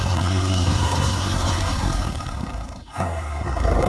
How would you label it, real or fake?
fake